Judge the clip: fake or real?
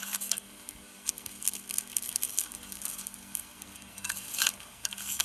fake